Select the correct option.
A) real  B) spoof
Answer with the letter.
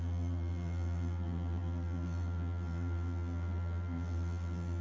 B